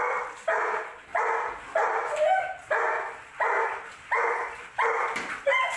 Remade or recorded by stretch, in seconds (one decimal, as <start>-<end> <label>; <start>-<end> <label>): 0.0-5.8 recorded